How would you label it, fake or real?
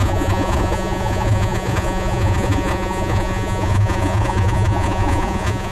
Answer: fake